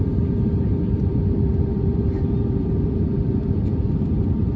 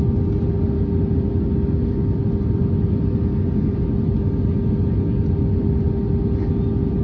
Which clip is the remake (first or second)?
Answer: first